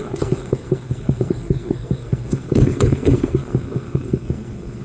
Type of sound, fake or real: fake